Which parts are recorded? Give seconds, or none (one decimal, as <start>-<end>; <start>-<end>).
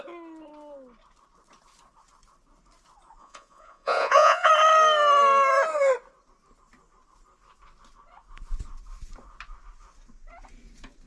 0.0-3.2; 4.5-11.1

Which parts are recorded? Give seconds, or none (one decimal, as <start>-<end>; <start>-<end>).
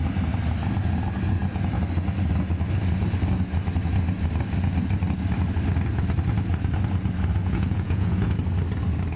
0.0-7.3; 8.3-9.2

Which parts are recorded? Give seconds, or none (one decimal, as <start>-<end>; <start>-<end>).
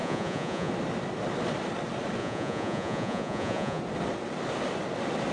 0.7-2.2; 3.8-5.3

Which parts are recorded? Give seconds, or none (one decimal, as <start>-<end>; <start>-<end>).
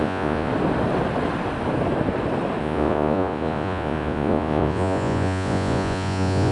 0.5-2.6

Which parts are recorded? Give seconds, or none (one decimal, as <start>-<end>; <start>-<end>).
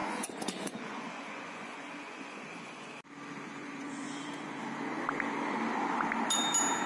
2.9-3.5; 4.6-6.9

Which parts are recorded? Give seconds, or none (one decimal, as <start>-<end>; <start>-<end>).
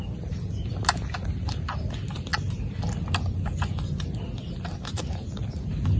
0.0-6.0